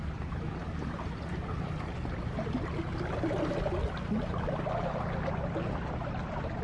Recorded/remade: recorded